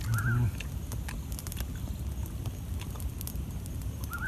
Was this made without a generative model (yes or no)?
yes